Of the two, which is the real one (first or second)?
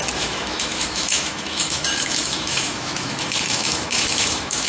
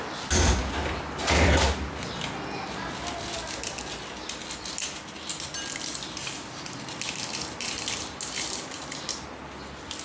second